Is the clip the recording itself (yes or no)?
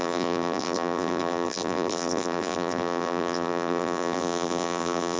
no